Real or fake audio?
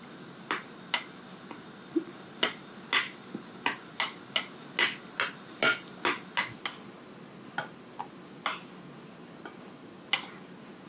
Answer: real